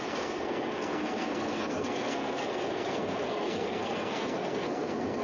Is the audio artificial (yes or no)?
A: yes